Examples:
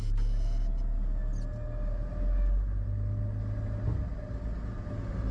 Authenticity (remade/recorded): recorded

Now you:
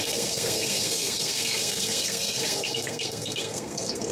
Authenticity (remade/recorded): remade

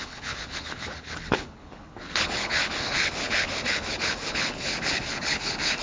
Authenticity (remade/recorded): remade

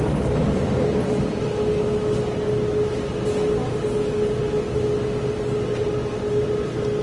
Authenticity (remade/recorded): recorded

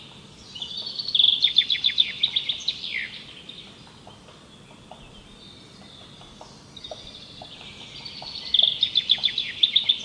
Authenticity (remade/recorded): recorded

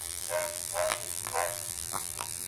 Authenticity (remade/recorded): remade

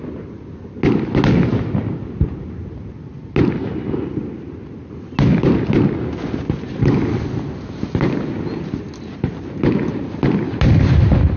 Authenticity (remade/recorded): recorded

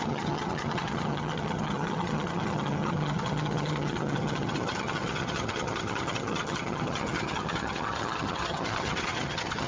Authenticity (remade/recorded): remade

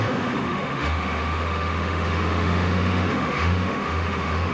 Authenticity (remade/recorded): remade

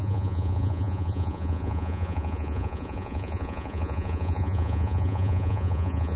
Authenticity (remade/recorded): remade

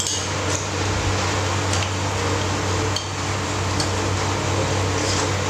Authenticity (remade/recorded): recorded